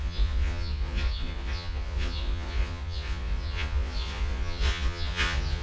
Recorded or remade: remade